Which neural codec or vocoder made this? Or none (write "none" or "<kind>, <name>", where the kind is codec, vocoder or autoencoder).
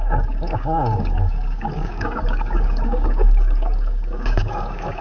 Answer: codec, DAC